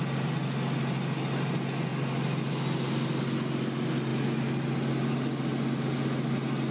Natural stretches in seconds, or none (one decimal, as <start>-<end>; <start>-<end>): 0.0-6.7